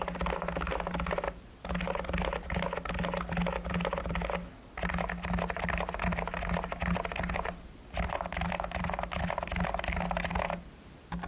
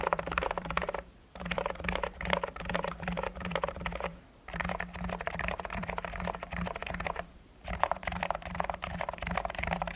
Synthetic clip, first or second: second